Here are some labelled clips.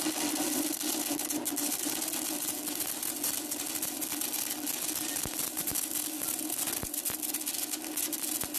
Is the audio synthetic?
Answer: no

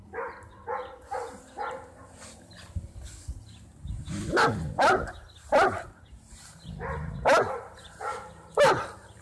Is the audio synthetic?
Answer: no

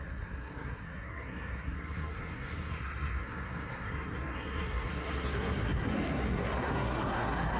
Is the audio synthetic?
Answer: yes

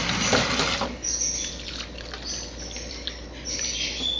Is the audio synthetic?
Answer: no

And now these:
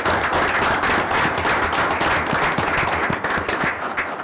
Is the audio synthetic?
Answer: no